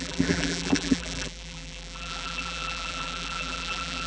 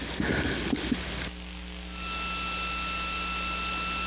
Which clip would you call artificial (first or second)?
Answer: first